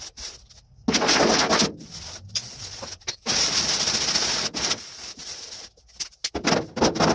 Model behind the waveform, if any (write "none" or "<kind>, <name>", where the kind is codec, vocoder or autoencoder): none